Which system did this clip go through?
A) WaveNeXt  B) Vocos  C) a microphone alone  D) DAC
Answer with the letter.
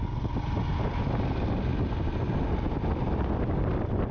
C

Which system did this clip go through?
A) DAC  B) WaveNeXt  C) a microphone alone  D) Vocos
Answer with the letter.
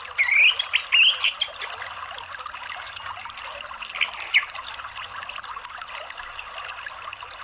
C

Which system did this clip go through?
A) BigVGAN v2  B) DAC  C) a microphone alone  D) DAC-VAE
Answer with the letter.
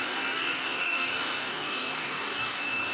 B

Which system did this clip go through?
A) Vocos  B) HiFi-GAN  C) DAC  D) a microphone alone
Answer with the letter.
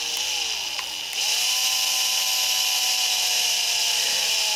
D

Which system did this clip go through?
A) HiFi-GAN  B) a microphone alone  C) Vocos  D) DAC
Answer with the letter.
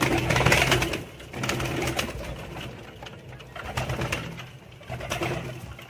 B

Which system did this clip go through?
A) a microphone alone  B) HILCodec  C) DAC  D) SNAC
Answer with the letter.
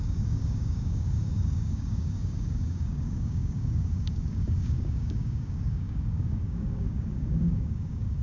C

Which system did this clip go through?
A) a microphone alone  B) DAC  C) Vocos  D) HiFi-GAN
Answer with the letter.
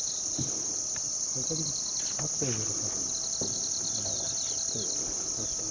A